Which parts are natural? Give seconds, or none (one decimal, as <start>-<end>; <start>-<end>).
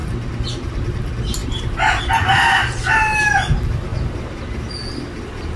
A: 0.0-1.4; 2.0-3.9; 4.7-5.6